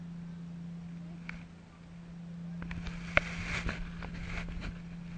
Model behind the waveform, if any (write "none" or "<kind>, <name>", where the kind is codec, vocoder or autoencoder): none